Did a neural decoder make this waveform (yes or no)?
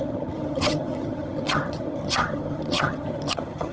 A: yes